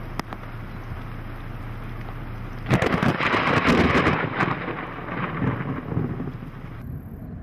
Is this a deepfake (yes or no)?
no